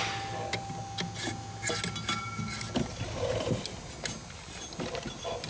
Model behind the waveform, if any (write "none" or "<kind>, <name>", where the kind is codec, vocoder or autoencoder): none